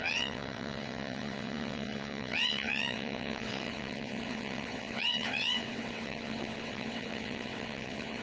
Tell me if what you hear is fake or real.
fake